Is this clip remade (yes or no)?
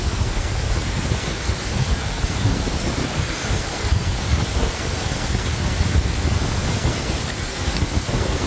yes